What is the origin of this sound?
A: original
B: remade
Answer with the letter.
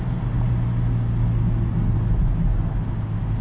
A